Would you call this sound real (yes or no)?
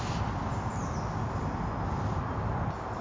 yes